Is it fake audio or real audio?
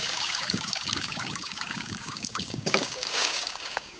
fake